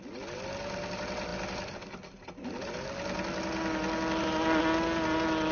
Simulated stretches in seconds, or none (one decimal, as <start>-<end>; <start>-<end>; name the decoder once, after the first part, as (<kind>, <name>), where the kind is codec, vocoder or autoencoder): none